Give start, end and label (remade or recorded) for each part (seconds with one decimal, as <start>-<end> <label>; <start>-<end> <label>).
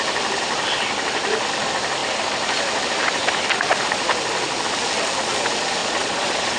0.0-5.8 recorded; 5.8-6.6 remade